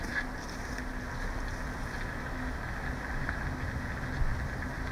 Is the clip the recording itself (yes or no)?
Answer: yes